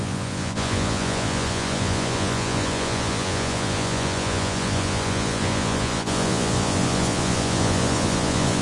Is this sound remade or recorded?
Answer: remade